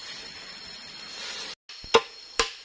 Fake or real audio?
real